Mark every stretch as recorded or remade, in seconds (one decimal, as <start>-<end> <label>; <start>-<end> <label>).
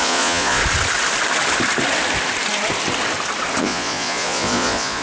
0.0-0.6 remade; 0.6-3.6 recorded; 3.6-5.0 remade